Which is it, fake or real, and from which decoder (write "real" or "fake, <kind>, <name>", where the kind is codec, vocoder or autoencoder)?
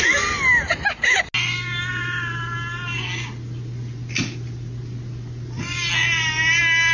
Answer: real